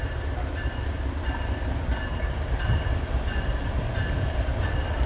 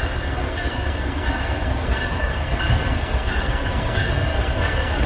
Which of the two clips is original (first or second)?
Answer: first